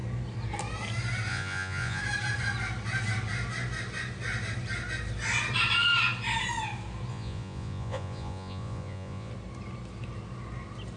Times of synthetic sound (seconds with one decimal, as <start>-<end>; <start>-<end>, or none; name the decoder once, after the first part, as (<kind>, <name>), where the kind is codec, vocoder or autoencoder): 1.3-2.0 (vocoder, Vocos); 7.1-9.3